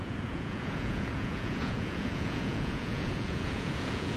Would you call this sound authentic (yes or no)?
no